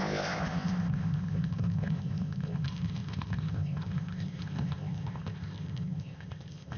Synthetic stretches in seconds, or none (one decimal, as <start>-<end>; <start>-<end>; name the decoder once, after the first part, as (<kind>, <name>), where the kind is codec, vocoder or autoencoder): 0.0-6.8 (codec, ZipCodec)